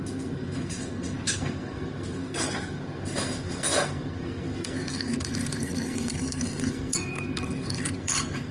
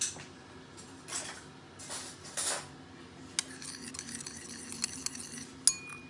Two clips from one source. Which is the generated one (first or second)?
first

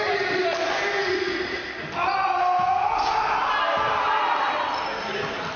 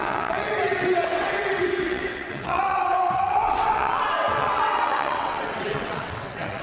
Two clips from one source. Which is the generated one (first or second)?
second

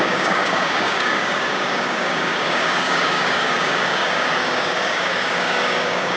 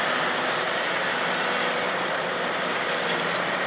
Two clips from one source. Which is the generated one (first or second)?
first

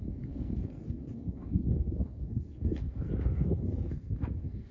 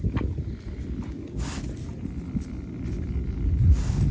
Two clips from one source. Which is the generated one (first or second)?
first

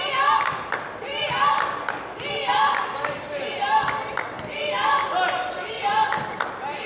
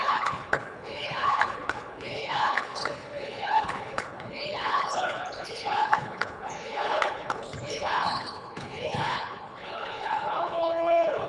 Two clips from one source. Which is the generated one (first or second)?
second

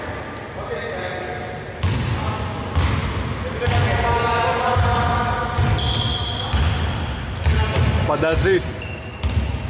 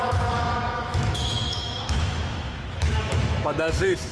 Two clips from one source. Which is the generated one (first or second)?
second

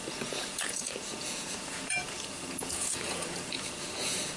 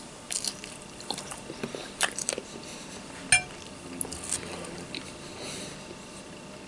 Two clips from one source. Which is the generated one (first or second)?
first